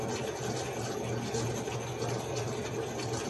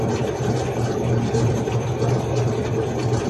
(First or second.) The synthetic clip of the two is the second